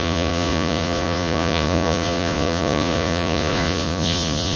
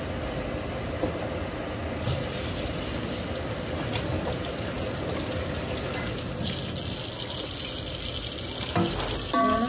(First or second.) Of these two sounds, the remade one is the first